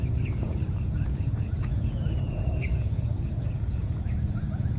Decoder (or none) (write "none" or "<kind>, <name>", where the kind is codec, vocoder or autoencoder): vocoder, Vocos